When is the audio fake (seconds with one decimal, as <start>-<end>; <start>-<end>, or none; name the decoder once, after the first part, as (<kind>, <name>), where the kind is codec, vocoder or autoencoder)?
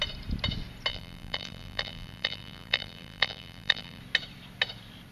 0.9-4.0 (vocoder, BigVGAN v2)